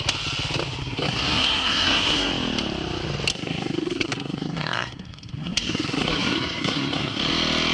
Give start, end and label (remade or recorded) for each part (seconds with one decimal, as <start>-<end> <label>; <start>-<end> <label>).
0.0-0.8 recorded; 0.8-2.3 remade; 2.3-3.3 recorded; 3.3-7.2 remade; 7.2-7.7 recorded